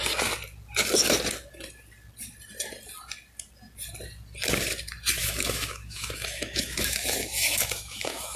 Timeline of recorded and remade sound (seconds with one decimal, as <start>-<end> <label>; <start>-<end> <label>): 0.0-5.2 recorded; 5.2-8.4 remade